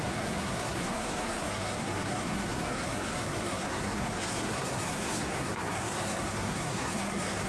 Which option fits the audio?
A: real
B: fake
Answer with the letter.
B